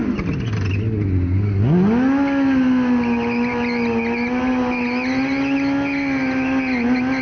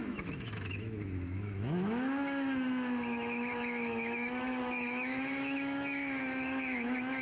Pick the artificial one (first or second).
second